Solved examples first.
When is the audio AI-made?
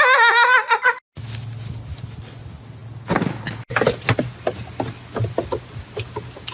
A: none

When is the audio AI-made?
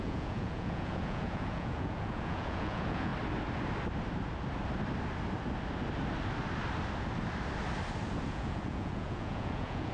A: 0.0-3.1 (vocoder, Vocos); 8.3-9.9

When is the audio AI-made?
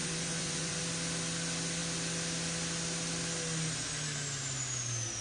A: 0.0-0.8 (vocoder, Vocos)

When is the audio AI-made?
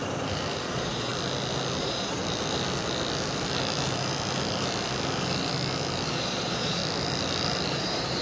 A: 0.6-1.1 (vocoder, Vocos); 1.8-2.2; 6.1-6.8; 7.7-8.2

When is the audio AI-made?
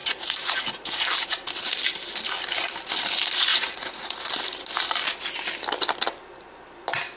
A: 0.0-1.0 (vocoder, Vocos); 3.5-4.3